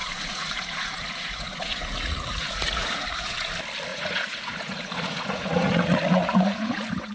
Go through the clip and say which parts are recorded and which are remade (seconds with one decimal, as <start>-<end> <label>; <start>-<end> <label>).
0.0-3.5 remade; 3.5-3.9 recorded; 3.9-7.1 remade